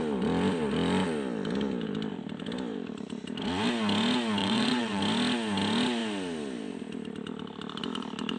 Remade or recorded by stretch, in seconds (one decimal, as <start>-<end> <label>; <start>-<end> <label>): 0.0-4.4 recorded; 4.4-5.0 remade; 5.0-8.4 recorded